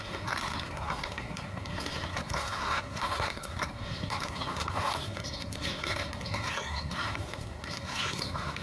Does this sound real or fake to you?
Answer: fake